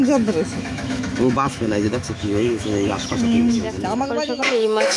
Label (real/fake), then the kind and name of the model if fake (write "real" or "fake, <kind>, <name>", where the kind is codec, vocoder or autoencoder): fake, autoencoder, DAC-VAE